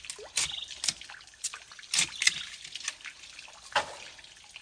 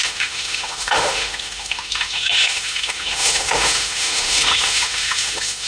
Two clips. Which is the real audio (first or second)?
first